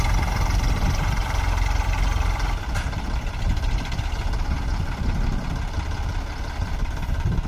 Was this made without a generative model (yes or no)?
no